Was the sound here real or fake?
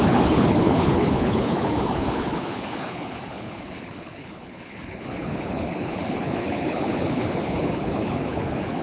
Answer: fake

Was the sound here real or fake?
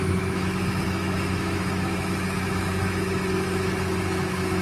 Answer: fake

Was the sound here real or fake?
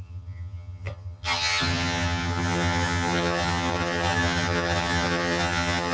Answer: fake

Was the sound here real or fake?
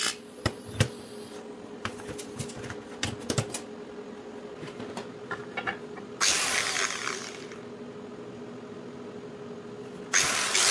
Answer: real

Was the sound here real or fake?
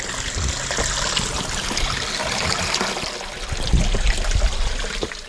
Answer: real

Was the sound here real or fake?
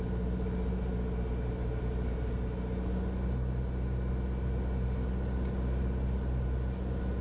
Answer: real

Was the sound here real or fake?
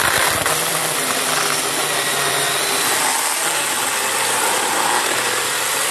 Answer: real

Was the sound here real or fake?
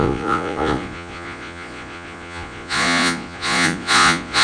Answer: fake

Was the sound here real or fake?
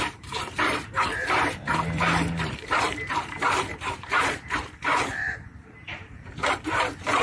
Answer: fake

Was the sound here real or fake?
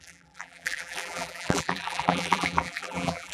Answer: fake